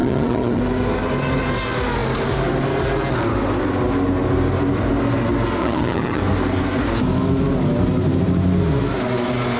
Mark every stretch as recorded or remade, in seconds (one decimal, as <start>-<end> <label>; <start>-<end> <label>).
0.0-0.6 remade; 0.6-5.6 recorded; 5.6-6.2 remade; 6.2-9.6 recorded